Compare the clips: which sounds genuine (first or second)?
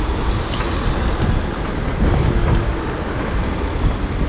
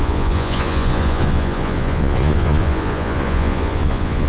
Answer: first